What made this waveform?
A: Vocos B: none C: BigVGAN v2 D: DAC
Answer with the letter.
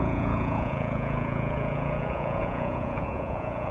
A